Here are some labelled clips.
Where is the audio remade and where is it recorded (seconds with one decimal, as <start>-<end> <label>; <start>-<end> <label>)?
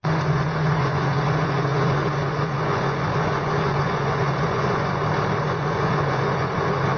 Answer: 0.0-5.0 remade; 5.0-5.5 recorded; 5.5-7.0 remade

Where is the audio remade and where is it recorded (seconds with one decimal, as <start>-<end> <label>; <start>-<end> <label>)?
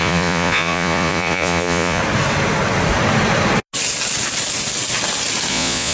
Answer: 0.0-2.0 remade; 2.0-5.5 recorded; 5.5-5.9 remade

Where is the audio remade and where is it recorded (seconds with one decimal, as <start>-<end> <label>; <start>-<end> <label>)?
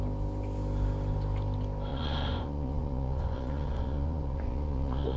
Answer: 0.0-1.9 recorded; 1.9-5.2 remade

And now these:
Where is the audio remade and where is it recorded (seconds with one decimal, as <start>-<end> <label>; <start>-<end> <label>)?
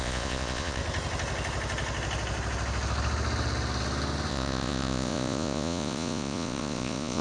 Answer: 0.0-0.8 remade; 0.8-4.3 recorded; 4.3-7.2 remade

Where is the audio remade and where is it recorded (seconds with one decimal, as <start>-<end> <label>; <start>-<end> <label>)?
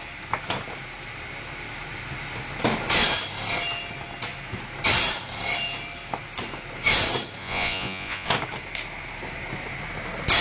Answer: 0.0-7.4 recorded; 7.4-8.3 remade; 8.3-10.4 recorded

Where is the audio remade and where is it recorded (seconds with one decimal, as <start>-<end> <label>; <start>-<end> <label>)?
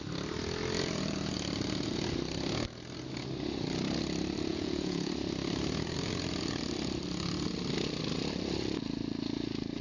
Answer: 0.0-4.5 recorded; 4.5-5.1 remade; 5.1-9.8 recorded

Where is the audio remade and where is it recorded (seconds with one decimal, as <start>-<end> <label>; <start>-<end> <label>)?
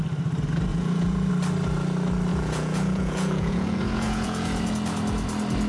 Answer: 0.0-0.7 recorded; 0.7-1.3 remade; 1.3-2.3 recorded; 2.3-4.7 remade; 4.7-5.7 recorded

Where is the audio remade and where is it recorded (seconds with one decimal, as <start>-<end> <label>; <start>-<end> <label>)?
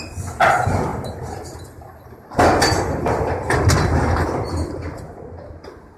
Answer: 0.0-6.0 recorded